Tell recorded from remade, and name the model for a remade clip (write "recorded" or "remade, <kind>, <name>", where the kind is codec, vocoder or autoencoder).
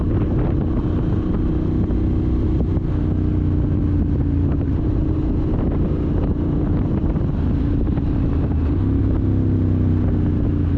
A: recorded